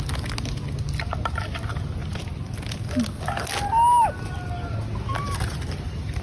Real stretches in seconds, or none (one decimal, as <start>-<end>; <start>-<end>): 0.0-6.2